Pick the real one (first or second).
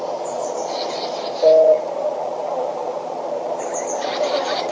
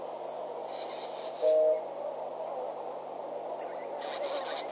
second